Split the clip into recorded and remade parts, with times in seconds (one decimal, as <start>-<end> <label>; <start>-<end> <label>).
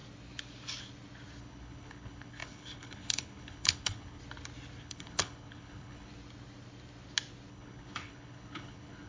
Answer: 0.0-1.4 recorded; 1.4-4.2 remade; 4.2-4.8 recorded; 4.8-6.1 remade; 6.1-7.5 recorded; 7.5-9.1 remade